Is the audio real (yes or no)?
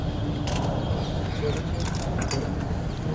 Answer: yes